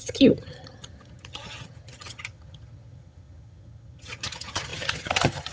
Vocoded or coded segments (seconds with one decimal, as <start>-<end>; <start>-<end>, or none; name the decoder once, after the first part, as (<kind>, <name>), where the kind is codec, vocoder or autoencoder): 0.0-5.5 (vocoder, HiFi-GAN)

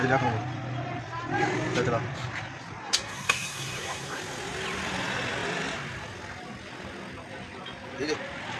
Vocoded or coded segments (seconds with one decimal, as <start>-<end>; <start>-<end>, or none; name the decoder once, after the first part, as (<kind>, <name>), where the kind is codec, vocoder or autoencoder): 2.8-4.2 (codec, SNAC)

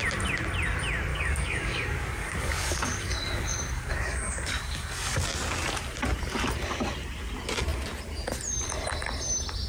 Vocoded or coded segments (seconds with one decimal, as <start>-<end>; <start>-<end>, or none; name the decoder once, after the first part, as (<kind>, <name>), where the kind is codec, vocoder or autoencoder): 1.1-5.2 (codec, DAC)

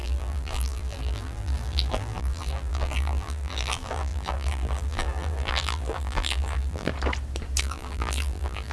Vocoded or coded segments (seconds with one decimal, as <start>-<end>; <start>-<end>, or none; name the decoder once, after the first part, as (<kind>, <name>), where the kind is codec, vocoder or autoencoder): 0.0-6.9 (vocoder, BigVGAN v2); 7.6-8.7

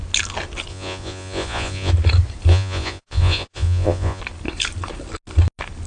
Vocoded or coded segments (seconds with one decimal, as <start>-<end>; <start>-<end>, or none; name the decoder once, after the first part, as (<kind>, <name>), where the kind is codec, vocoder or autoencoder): 0.7-1.9 (vocoder, Vocos); 2.5-4.2

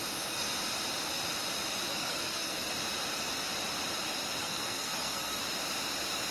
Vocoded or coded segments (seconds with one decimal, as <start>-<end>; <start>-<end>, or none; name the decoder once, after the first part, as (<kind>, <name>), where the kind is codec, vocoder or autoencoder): 1.9-2.7 (codec, SNAC); 4.4-5.4

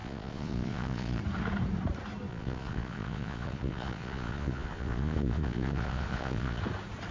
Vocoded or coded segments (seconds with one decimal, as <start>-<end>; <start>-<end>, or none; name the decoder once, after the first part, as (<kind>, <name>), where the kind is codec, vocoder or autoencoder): 0.0-1.2 (vocoder, Vocos); 2.3-6.6

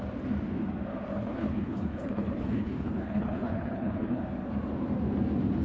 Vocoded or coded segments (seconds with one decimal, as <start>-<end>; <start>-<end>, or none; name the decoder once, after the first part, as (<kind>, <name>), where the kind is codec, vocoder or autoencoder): 1.1-4.2 (codec, HILCodec)